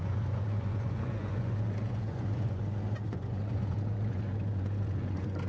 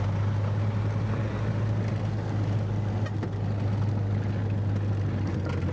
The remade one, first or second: first